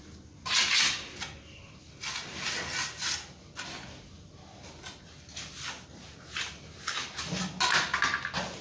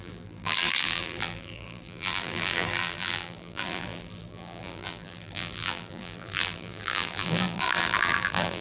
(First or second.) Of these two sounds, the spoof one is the second